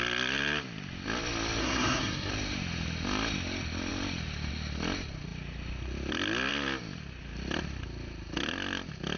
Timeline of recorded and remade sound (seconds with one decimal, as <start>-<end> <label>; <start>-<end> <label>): 0.0-1.6 recorded; 1.6-2.3 remade; 2.3-9.2 recorded